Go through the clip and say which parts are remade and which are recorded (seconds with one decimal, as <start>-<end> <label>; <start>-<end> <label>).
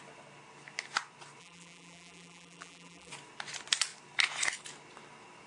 0.0-1.4 recorded; 1.4-3.1 remade; 3.1-5.5 recorded